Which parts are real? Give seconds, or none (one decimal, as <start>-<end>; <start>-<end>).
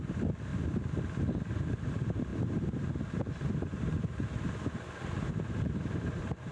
0.5-1.6